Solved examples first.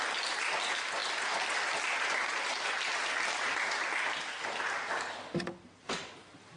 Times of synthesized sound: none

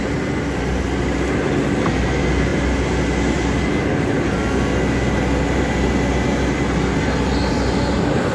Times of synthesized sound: none

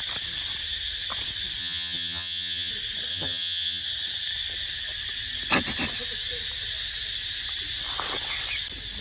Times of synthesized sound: 1.6-2.7 (vocoder, HiFi-GAN); 3.1-3.8

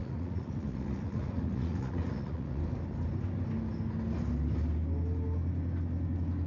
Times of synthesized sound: 0.0-2.6 (vocoder, Vocos)

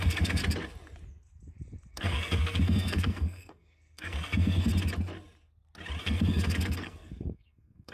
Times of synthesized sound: 0.0-0.4 (codec, SNAC); 1.9-4.7; 6.0-7.9

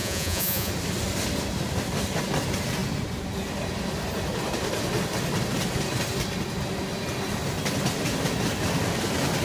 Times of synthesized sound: 0.0-0.7 (vocoder, Vocos)

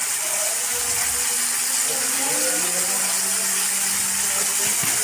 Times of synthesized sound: none